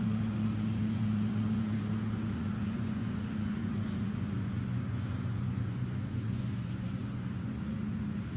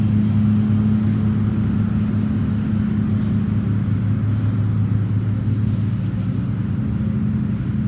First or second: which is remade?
first